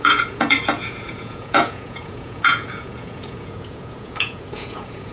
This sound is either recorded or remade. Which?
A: remade